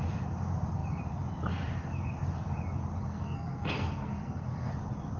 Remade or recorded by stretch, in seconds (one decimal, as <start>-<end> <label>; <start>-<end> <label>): 0.0-3.0 recorded; 3.0-4.7 remade; 4.7-5.2 recorded